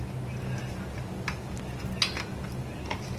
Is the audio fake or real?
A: real